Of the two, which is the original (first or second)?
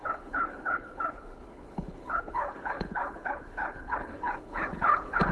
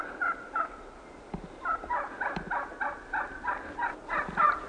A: second